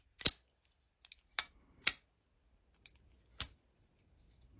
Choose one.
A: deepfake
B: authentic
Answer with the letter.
B